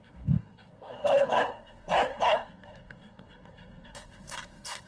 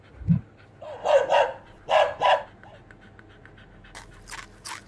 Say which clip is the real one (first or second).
second